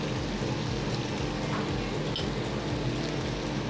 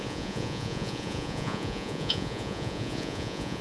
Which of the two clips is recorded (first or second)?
first